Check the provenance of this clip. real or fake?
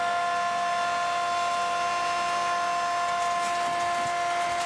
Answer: real